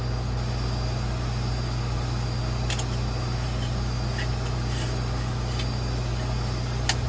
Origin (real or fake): real